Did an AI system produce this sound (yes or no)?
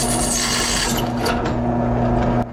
no